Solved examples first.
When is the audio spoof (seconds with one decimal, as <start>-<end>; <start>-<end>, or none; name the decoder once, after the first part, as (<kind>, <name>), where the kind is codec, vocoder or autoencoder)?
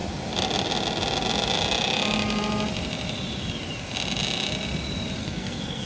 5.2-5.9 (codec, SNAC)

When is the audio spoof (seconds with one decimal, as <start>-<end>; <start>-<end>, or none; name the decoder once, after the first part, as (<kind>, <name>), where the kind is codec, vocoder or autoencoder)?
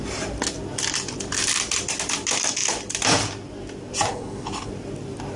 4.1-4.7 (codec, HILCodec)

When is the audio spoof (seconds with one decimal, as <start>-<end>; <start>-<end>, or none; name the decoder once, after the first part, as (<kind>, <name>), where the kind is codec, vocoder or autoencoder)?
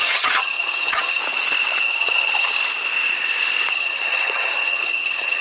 0.0-1.2 (vocoder, HiFi-GAN); 1.8-2.6; 3.7-5.4